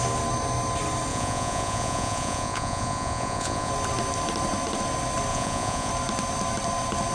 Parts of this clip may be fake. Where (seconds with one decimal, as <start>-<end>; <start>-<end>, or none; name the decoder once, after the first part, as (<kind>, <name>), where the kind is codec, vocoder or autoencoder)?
1.1-3.7 (vocoder, Vocos); 5.3-5.9